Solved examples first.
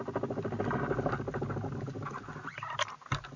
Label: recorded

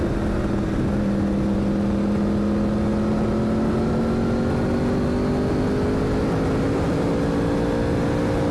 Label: recorded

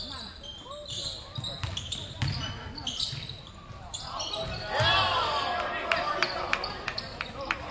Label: recorded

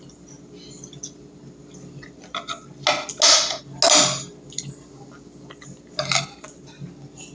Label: recorded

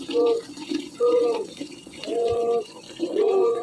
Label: remade